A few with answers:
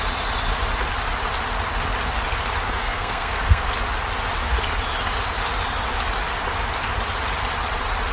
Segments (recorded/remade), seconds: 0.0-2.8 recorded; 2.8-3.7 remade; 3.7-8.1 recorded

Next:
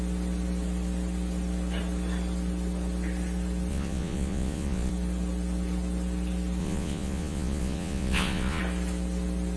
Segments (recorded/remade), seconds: 0.0-3.7 recorded; 3.7-4.9 remade; 4.9-6.6 recorded; 6.6-8.6 remade; 8.6-9.6 recorded

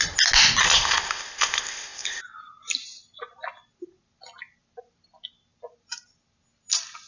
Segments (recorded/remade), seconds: 0.0-0.6 recorded; 0.6-2.2 remade; 2.2-7.1 recorded

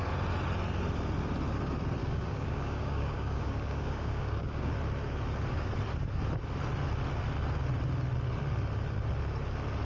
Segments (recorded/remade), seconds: 0.0-2.0 recorded; 2.0-4.7 remade; 4.7-9.8 recorded

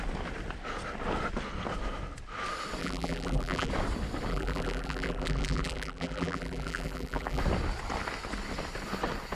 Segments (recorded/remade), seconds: 0.0-2.8 recorded; 2.8-3.7 remade; 3.7-4.3 recorded; 4.3-7.4 remade; 7.4-9.3 recorded